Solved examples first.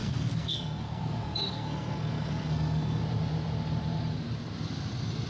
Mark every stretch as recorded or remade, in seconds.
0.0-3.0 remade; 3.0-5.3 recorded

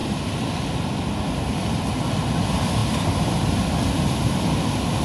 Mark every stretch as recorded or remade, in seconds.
0.0-0.7 remade; 0.7-5.0 recorded